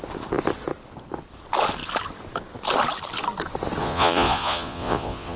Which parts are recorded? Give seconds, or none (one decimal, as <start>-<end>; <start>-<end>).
0.0-3.8

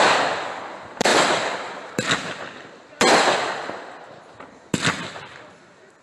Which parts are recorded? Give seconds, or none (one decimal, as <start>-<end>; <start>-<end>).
0.0-6.0

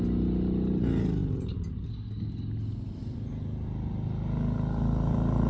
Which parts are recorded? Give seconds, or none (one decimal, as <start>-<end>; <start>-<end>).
0.0-5.5

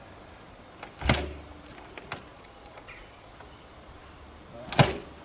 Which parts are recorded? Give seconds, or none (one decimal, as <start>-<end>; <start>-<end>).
0.0-2.3; 3.3-5.2

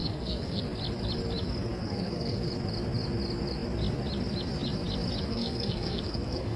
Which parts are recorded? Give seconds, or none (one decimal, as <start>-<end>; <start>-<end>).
0.6-1.8; 2.5-5.3